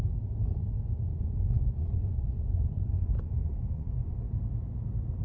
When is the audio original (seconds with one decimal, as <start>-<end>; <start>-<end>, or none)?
0.0-1.1; 4.2-5.2